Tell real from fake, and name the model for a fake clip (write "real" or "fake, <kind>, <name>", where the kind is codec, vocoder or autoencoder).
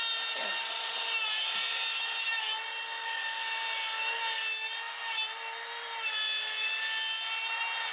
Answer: real